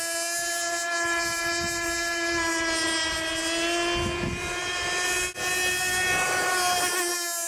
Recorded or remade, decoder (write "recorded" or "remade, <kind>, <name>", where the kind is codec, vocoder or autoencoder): recorded